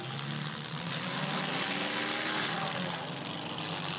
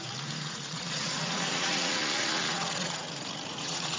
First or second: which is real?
first